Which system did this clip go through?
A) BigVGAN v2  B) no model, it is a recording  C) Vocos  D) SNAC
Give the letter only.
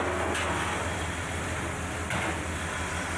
B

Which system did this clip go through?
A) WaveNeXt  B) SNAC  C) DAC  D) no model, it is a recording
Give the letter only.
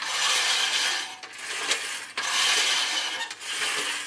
D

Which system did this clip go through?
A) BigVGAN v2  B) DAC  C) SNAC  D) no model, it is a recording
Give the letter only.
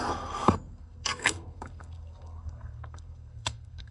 C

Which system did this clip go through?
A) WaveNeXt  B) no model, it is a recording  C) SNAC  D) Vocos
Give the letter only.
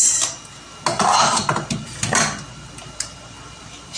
B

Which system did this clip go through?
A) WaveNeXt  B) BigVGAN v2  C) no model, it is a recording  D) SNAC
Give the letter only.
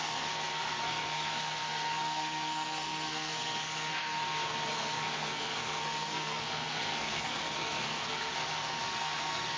D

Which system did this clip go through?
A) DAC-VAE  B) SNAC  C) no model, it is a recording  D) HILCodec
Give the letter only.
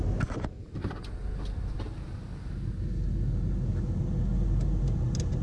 C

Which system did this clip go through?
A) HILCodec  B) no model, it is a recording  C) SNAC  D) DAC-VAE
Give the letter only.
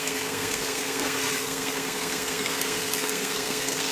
C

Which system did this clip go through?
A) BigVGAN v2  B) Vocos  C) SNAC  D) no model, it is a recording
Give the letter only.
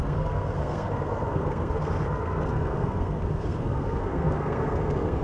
C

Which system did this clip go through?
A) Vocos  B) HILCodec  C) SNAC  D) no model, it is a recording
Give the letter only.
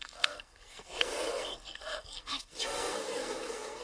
C